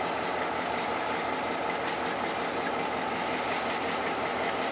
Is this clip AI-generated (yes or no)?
no